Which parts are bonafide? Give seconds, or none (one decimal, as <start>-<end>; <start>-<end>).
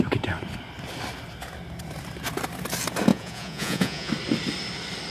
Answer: 0.0-3.1; 4.1-5.1